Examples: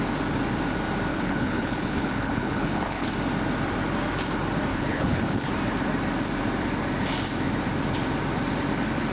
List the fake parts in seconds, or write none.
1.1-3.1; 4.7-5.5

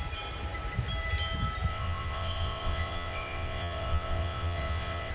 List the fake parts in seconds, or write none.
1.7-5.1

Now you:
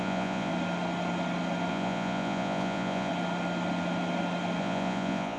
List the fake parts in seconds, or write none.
0.0-0.5; 1.7-3.1; 4.6-5.4

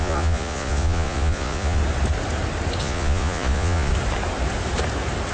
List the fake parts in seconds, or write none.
0.0-1.8; 2.8-3.9

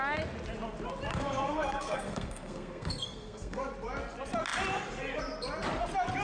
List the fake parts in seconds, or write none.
1.1-3.7